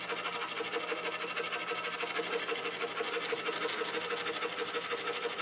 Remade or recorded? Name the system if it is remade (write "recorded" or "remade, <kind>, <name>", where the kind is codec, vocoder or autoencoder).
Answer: recorded